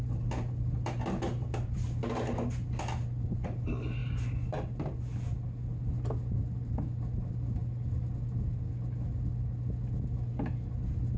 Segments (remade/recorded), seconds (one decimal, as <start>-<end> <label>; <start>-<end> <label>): 0.0-11.2 recorded